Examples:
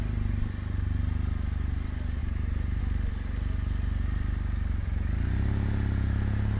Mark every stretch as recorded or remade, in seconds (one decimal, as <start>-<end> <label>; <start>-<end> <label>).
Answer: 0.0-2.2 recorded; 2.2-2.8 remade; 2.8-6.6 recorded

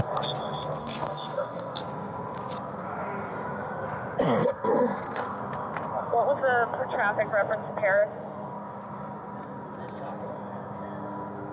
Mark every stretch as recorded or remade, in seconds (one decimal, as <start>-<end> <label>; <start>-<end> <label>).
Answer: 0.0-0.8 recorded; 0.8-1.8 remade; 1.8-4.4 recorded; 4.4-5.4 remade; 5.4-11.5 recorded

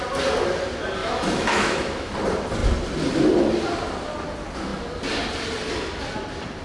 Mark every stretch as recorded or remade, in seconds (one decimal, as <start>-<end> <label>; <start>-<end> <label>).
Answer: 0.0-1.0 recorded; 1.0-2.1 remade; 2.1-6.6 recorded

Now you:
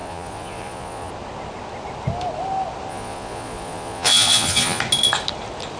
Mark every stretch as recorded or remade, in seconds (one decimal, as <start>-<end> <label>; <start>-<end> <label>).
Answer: 0.0-1.1 remade; 1.1-2.9 recorded; 2.9-4.8 remade; 4.8-5.8 recorded